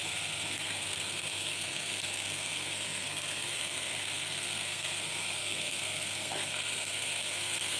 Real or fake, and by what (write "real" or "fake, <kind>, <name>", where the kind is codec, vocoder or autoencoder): fake, codec, SNAC